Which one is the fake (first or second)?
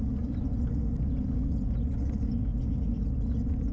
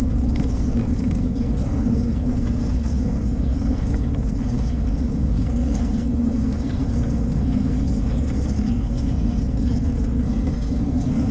second